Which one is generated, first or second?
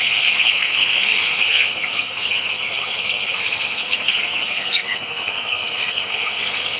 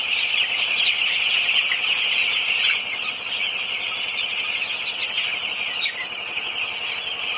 first